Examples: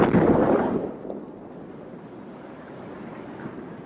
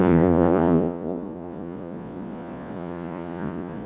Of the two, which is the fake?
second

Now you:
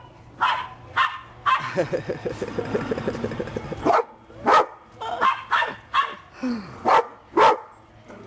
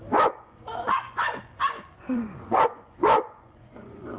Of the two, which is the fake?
second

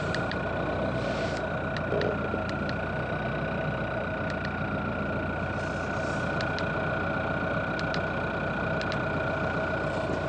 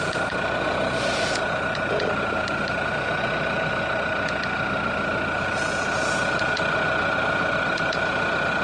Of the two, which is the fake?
second